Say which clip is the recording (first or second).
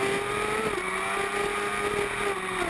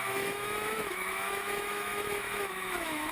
first